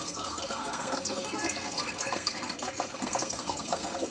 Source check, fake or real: fake